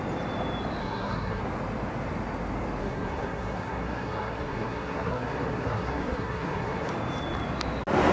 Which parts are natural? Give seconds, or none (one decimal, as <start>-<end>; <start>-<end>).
0.0-0.8; 1.4-2.8; 6.9-8.1